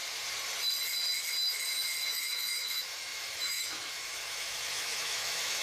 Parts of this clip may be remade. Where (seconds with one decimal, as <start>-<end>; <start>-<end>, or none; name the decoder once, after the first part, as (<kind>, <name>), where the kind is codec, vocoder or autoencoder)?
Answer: 2.1-5.6 (autoencoder, DAC-VAE)

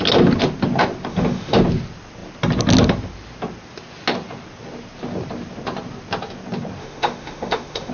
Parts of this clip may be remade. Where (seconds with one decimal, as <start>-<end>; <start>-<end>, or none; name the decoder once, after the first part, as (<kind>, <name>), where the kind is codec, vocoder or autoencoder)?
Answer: 1.1-1.6 (autoencoder, DAC-VAE); 6.8-7.9

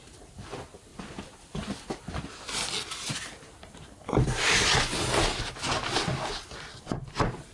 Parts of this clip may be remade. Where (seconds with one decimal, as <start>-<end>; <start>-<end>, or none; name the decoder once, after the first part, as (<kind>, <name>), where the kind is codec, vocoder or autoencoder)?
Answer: none